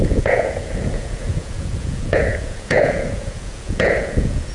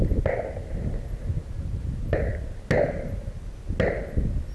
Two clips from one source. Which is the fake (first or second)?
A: first